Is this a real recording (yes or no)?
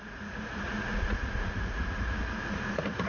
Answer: no